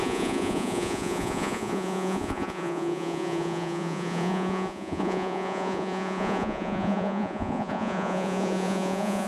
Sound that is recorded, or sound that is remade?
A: remade